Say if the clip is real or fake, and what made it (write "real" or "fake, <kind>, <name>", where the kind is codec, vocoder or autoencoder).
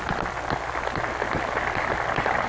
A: real